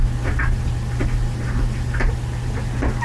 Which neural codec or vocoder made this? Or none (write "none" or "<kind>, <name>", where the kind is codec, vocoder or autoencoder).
none